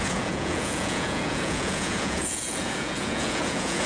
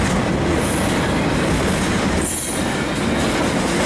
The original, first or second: second